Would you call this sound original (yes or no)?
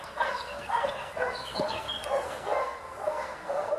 no